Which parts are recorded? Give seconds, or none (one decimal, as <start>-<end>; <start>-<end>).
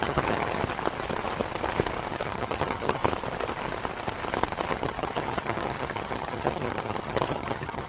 0.6-2.1; 3.0-4.7